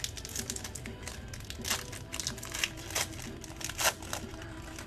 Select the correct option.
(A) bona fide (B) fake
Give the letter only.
A